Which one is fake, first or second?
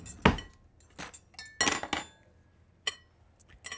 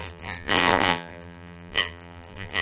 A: second